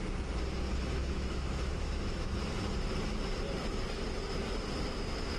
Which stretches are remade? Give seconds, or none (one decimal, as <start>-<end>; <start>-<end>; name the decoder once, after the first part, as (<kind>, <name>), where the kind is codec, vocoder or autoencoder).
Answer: 1.0-2.3 (autoencoder, DAC-VAE)